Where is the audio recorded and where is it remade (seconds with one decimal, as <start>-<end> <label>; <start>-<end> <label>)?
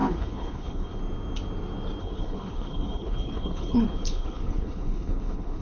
0.0-1.0 remade; 1.0-2.0 recorded; 2.0-5.6 remade